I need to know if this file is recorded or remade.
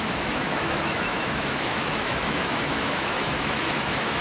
remade